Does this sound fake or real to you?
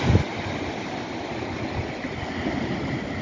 real